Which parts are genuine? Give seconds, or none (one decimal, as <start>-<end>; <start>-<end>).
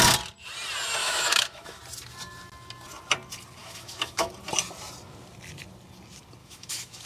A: 0.0-1.0; 1.8-3.6; 4.3-6.4